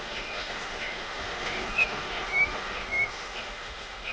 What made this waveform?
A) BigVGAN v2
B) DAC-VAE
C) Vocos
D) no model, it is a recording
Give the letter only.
B